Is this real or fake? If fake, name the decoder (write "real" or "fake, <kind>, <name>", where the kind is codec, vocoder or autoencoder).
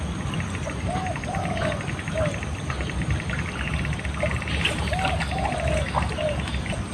real